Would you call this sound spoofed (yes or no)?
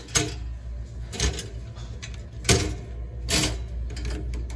no